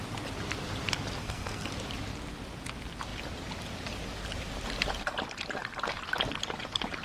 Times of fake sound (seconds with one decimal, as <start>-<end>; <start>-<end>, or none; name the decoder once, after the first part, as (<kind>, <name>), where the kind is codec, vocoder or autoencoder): 1.2-1.7 (codec, SNAC)